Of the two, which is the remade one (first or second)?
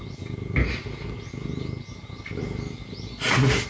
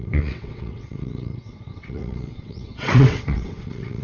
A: second